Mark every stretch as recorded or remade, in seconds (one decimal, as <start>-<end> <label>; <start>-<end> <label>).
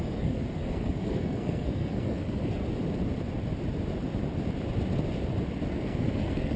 0.0-2.6 remade; 2.6-5.7 recorded; 5.7-6.6 remade